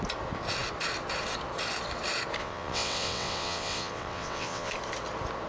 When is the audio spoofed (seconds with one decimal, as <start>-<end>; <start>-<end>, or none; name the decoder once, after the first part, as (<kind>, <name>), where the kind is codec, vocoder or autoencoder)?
2.4-4.7 (vocoder, WaveNeXt)